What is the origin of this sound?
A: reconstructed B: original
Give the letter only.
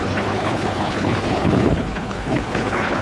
A